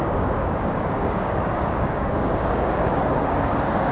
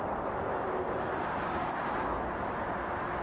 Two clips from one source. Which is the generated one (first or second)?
first